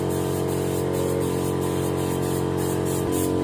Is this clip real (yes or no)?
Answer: yes